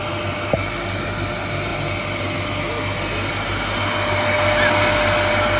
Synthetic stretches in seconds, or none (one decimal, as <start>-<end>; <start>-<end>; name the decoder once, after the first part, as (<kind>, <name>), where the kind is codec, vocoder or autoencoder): none